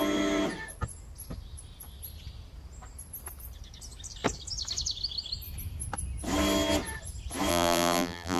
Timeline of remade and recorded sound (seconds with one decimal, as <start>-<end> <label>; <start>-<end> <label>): 0.0-7.5 recorded; 7.5-8.4 remade